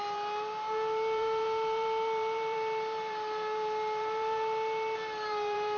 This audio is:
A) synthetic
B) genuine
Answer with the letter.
A